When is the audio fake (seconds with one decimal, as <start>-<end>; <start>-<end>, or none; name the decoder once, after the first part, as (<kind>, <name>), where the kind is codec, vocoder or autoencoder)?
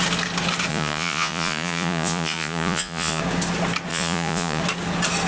0.7-3.2 (vocoder, Vocos); 3.9-4.6